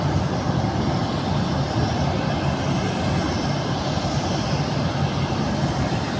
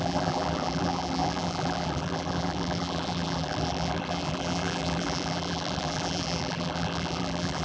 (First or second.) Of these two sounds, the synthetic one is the second